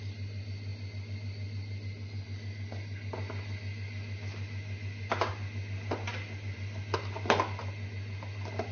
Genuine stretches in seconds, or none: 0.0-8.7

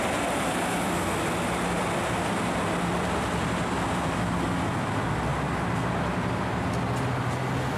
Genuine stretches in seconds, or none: 0.0-7.8

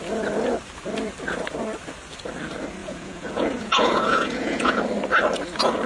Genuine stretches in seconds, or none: 0.0-2.8; 4.8-5.9

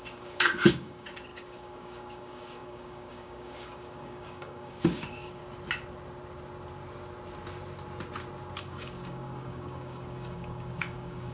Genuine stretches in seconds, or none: 5.4-8.6

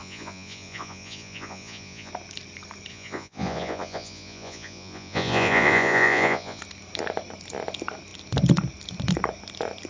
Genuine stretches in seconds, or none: 2.1-2.9; 6.6-9.9

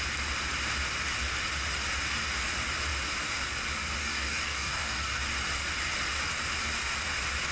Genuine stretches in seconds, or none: 0.0-4.0; 5.2-7.5

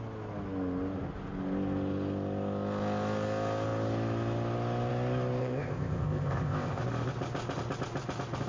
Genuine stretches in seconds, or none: 0.0-5.4; 6.8-8.5

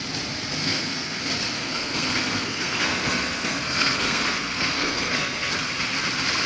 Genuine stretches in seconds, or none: 0.0-0.6; 1.2-1.6; 5.5-6.5